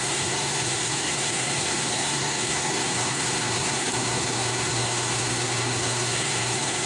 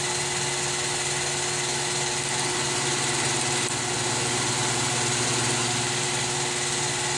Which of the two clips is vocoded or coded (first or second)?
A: first